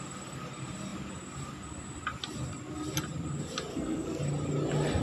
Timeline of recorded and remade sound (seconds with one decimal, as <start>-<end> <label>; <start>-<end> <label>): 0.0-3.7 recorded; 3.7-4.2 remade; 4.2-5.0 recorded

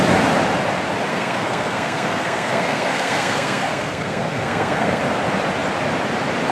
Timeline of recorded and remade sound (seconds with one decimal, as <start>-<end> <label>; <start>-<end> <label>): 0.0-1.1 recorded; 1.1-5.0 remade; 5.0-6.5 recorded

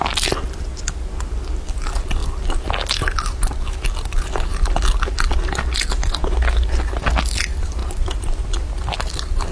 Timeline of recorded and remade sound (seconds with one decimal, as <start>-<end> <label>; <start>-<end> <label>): 0.0-9.5 recorded

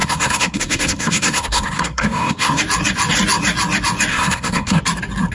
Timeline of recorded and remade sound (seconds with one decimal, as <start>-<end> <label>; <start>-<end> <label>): 0.0-2.6 remade; 2.6-4.1 recorded; 4.1-4.8 remade; 4.8-5.3 recorded

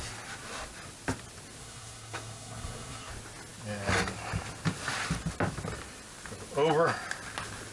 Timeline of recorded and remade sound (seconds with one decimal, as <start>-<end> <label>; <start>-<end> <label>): 0.0-1.6 recorded; 1.6-3.1 remade; 3.1-7.7 recorded